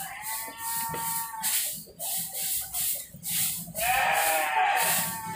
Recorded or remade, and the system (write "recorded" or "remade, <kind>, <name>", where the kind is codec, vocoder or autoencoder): recorded